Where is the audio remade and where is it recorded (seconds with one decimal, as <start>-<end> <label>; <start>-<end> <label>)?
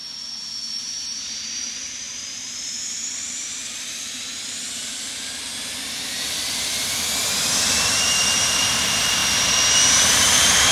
0.0-0.8 recorded; 0.8-4.3 remade; 4.3-7.3 recorded; 7.3-9.2 remade; 9.2-9.7 recorded; 9.7-10.7 remade